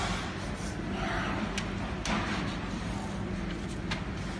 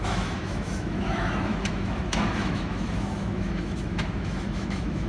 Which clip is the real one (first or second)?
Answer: first